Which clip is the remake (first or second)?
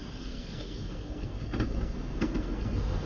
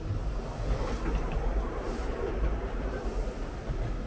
first